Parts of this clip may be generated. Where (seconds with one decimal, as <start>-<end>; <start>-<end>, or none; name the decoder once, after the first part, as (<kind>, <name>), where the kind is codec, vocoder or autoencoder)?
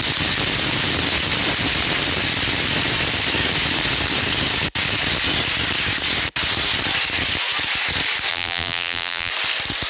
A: 8.3-9.3 (vocoder, BigVGAN v2)